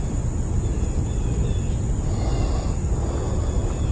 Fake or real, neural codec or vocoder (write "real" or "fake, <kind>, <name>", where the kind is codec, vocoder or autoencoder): real